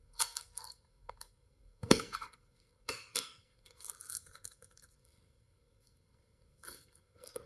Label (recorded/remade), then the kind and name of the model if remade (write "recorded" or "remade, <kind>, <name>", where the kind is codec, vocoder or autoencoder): remade, codec, SNAC